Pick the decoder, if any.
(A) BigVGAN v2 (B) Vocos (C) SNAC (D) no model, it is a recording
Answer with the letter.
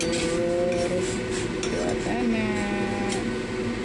D